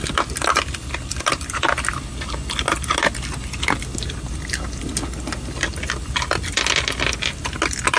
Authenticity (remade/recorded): recorded